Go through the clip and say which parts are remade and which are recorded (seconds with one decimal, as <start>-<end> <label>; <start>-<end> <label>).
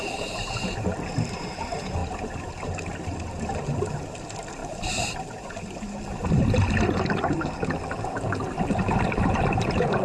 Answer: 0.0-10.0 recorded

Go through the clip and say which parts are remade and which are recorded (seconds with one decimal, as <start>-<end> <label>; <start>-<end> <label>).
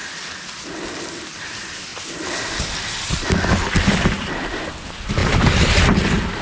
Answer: 0.0-0.6 remade; 0.6-5.2 recorded; 5.2-6.4 remade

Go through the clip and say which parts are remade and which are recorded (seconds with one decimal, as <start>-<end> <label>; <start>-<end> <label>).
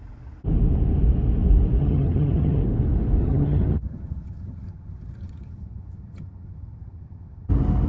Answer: 0.0-1.8 recorded; 1.8-2.6 remade; 2.6-3.2 recorded; 3.2-7.5 remade; 7.5-7.9 recorded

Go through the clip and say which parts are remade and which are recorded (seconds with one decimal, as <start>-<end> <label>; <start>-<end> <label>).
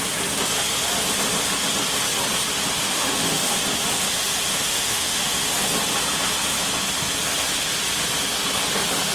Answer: 0.0-2.8 recorded; 2.8-3.5 remade; 3.5-4.5 recorded; 4.5-5.2 remade; 5.2-9.1 recorded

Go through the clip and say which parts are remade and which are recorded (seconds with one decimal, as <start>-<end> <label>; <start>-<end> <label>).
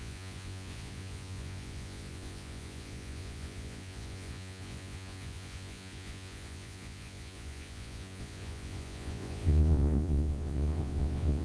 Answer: 0.0-11.4 remade